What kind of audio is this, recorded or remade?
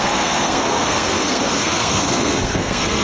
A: remade